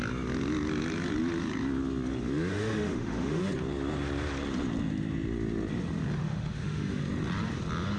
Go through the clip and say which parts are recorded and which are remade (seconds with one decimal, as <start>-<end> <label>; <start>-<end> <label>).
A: 0.0-2.5 recorded; 2.5-3.4 remade; 3.4-6.2 recorded; 6.2-7.0 remade; 7.0-8.0 recorded